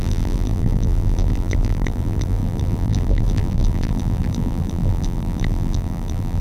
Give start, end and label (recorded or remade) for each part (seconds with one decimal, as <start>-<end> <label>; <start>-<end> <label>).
0.0-6.4 remade